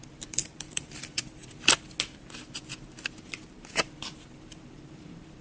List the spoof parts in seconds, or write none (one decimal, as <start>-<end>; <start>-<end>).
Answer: 0.0-1.4; 3.5-5.4